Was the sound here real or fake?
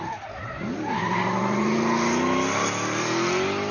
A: real